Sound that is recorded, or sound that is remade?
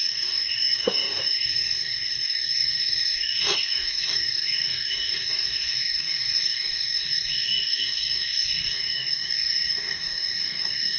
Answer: remade